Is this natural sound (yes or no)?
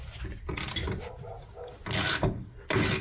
yes